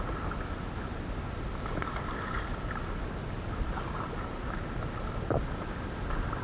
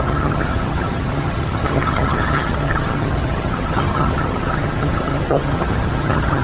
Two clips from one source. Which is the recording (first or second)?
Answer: first